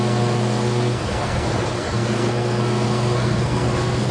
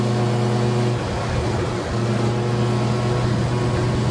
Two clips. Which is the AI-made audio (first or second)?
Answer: first